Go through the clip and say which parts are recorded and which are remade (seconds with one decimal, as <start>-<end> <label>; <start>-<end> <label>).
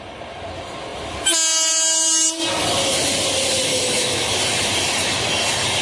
0.0-3.7 recorded; 3.7-4.4 remade; 4.4-5.8 recorded